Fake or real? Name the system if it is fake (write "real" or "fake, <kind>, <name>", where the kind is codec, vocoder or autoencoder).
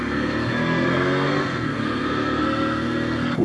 fake, codec, SNAC